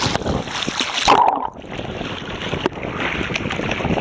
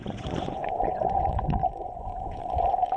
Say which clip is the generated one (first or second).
second